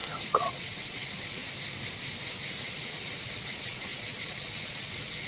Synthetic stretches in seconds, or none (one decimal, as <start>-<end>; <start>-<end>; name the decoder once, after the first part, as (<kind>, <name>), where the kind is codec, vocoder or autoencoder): 0.0-1.4 (vocoder, WaveNeXt); 2.6-5.3

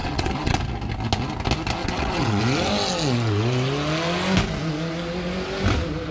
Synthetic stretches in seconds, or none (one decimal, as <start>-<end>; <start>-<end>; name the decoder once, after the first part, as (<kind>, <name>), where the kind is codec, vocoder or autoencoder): 0.0-0.6 (vocoder, WaveNeXt); 1.8-2.4

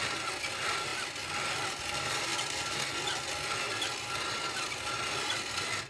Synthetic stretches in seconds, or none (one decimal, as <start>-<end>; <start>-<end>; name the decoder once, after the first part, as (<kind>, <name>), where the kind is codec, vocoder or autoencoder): none